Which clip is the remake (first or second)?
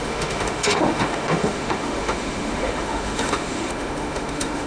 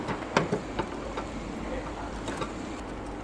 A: first